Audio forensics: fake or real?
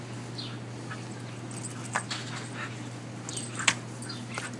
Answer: real